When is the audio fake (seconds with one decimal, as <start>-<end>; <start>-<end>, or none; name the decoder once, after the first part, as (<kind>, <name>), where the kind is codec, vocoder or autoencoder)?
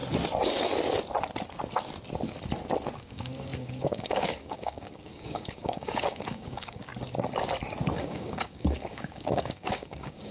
3.0-6.9 (codec, DAC); 8.0-10.3